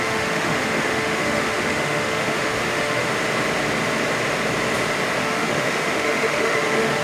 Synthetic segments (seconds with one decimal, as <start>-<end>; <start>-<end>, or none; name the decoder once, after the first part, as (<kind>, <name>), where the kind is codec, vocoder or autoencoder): 0.0-3.1 (autoencoder, DAC-VAE); 5.2-7.0